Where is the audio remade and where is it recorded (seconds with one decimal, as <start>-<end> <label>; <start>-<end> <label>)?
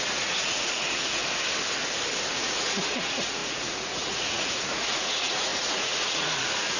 0.0-1.2 remade; 1.2-2.3 recorded; 2.3-6.8 remade